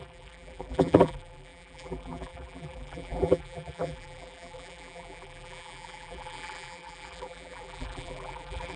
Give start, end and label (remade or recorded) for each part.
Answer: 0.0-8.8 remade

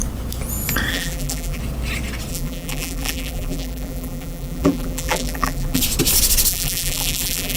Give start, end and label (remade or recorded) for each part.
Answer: 0.0-0.9 recorded; 0.9-1.6 remade; 1.6-2.3 recorded; 2.3-5.8 remade; 5.8-6.5 recorded; 6.5-7.6 remade

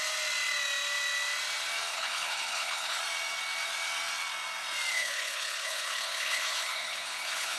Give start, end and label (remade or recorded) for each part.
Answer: 0.0-1.9 recorded; 1.9-3.0 remade; 3.0-4.9 recorded; 4.9-7.6 remade

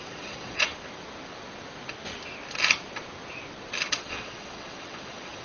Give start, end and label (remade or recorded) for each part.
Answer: 0.0-0.7 remade; 0.7-3.9 recorded; 3.9-5.4 remade

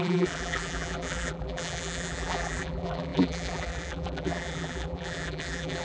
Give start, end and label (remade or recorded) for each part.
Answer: 0.0-5.8 remade

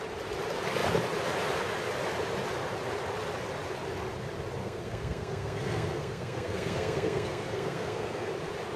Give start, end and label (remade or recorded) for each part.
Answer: 0.0-4.6 recorded; 4.6-8.3 remade; 8.3-8.8 recorded

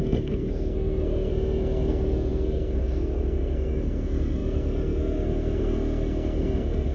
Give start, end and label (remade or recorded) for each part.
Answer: 0.0-6.9 remade